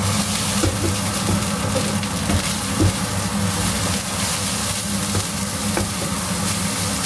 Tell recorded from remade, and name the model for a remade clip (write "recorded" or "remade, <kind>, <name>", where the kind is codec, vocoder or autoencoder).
recorded